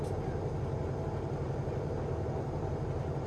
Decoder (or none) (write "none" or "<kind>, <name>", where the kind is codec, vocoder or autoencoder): none